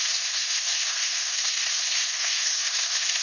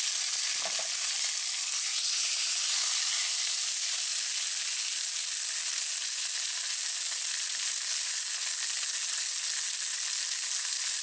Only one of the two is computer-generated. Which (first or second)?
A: first